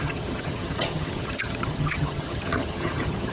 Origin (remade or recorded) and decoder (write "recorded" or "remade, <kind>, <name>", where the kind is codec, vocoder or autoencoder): remade, vocoder, HiFi-GAN